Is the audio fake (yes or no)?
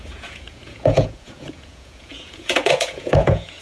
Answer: yes